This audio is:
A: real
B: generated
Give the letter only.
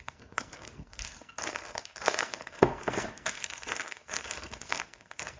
B